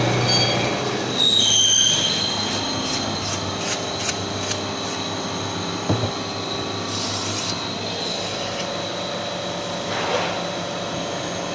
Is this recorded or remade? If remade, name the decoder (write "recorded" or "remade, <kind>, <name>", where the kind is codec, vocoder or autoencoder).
recorded